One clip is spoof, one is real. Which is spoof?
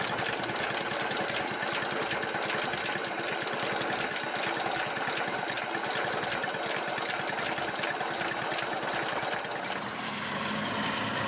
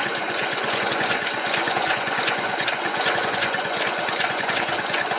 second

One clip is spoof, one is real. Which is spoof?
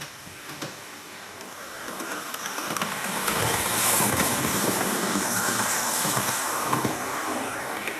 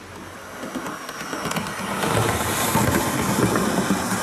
first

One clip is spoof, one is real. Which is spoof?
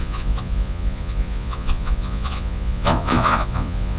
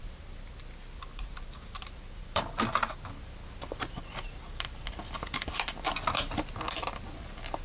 first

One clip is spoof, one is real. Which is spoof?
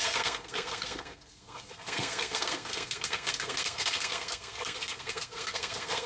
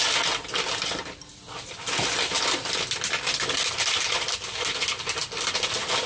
first